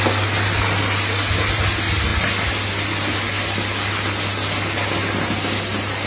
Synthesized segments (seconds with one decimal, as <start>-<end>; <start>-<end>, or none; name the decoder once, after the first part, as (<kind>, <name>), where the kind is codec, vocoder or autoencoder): none